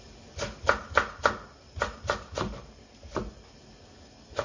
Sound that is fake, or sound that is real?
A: real